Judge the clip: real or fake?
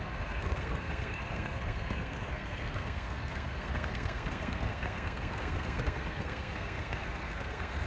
fake